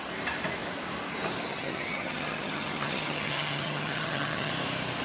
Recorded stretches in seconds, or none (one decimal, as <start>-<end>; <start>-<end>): 0.0-1.5; 4.5-5.0